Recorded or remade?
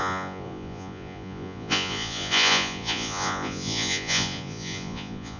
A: remade